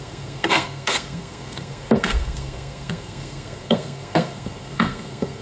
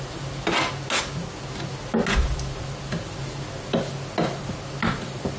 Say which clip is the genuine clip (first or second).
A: second